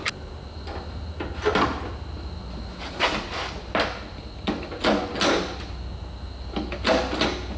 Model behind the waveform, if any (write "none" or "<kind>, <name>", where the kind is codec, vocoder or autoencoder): none